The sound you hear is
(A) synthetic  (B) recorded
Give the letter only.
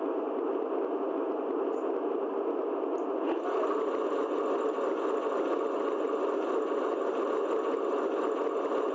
B